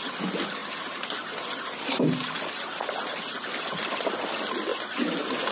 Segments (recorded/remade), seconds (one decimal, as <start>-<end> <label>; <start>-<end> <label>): 0.0-5.5 recorded